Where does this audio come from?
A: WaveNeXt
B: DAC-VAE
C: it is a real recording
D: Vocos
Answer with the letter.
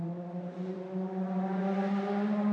D